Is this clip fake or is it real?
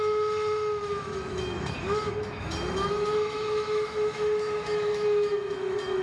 fake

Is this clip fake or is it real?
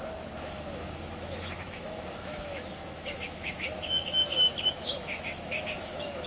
fake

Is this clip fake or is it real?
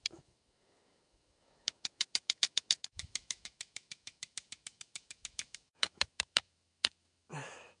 fake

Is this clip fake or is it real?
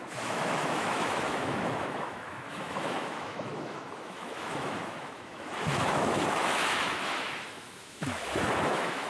fake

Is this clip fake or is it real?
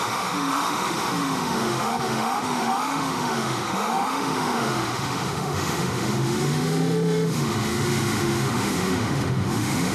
fake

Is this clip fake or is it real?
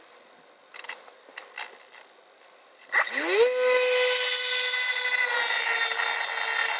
real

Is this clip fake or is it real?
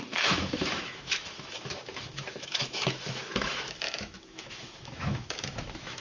fake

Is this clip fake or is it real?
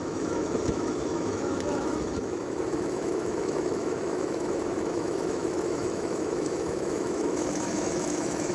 fake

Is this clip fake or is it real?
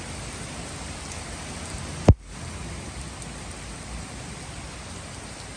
real